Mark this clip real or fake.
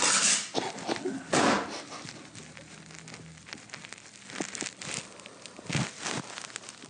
real